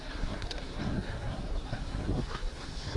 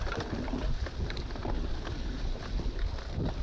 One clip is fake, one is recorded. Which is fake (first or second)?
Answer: first